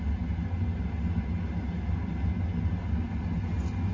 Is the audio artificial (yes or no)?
no